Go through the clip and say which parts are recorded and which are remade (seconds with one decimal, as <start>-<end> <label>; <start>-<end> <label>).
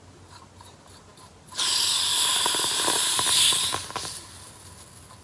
0.0-5.2 recorded